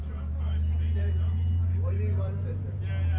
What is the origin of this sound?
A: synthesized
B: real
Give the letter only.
B